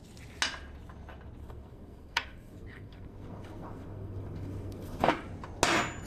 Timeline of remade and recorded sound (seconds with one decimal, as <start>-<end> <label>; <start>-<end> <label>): 0.0-1.4 recorded; 1.4-5.1 remade; 5.1-6.1 recorded